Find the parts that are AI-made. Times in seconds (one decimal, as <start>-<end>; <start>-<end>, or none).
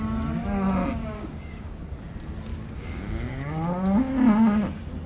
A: 1.0-1.8; 2.5-4.1